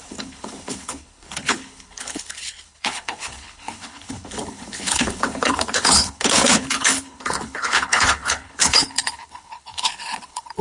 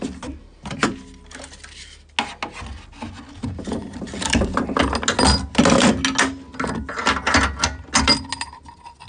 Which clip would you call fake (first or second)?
first